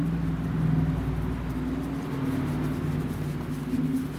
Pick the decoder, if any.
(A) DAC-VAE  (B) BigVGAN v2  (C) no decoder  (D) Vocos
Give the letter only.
C